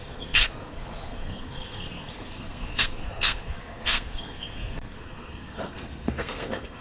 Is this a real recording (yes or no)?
no